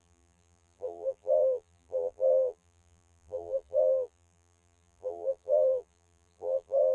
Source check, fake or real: fake